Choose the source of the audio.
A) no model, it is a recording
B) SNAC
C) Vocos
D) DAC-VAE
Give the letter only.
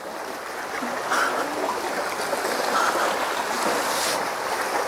A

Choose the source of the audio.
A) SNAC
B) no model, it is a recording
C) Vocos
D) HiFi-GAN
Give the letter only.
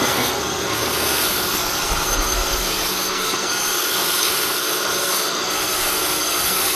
A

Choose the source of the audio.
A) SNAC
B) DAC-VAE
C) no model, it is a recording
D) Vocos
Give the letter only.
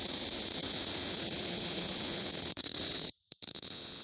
D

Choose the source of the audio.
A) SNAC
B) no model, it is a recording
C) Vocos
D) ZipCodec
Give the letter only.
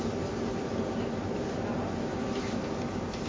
B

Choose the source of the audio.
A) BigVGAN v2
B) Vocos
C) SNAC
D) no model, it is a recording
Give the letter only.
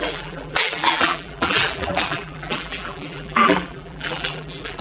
A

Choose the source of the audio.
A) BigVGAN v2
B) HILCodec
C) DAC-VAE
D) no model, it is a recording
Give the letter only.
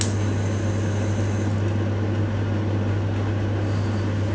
D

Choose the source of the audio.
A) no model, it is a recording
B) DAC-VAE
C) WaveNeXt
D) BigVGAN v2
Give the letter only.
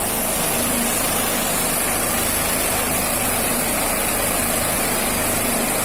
A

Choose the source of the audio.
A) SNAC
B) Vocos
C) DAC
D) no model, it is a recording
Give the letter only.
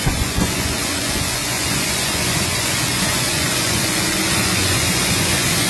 B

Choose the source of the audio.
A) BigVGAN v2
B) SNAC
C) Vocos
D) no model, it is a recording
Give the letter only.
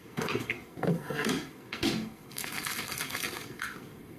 B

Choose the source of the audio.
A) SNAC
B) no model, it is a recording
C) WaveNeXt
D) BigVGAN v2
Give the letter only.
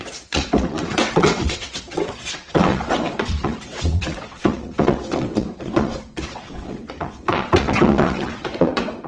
C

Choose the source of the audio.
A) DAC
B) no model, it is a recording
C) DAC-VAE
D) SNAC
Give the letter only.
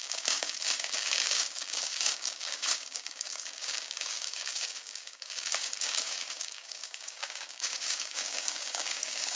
A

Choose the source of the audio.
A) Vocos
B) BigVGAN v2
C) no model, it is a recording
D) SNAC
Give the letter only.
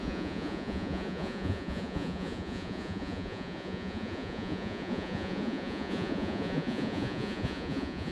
A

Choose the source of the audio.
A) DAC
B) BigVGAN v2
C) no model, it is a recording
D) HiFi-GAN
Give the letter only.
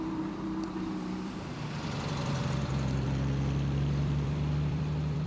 B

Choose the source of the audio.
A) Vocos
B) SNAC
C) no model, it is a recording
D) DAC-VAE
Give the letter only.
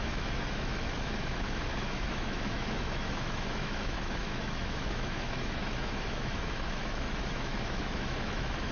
D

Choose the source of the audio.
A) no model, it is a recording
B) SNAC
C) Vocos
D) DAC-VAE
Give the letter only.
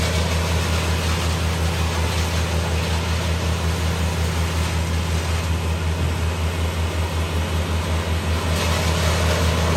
A